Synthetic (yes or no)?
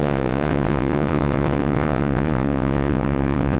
yes